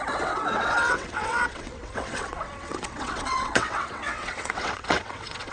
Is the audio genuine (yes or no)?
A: no